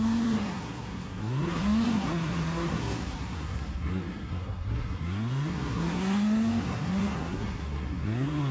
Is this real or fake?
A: fake